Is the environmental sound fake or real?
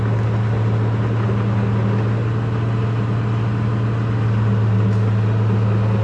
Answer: real